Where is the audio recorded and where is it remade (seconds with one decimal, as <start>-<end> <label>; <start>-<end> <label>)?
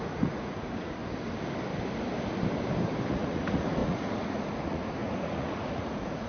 0.0-1.0 remade; 1.0-3.1 recorded; 3.1-6.3 remade